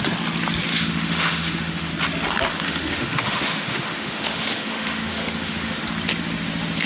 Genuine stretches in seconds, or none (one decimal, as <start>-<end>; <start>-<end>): 0.0-0.7; 1.9-2.5; 5.8-6.9